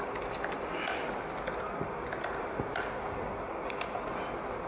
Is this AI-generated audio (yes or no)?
no